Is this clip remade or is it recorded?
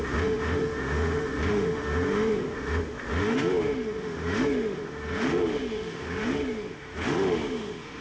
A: remade